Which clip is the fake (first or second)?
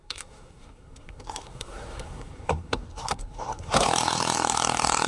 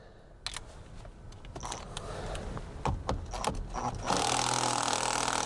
first